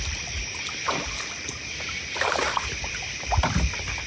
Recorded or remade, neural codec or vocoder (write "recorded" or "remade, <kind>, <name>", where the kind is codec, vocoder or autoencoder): recorded